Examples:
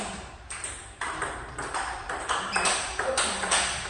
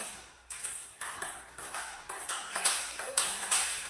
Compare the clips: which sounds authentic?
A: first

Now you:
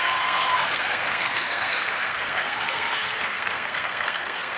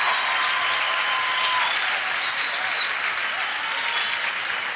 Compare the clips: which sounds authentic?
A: second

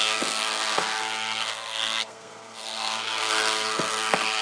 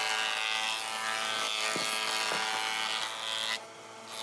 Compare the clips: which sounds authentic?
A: second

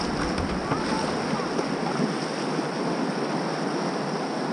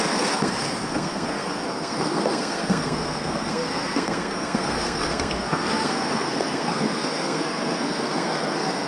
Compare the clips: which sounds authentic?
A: first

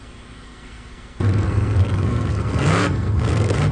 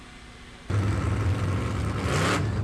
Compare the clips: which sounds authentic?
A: second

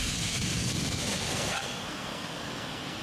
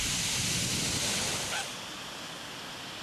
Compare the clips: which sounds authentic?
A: second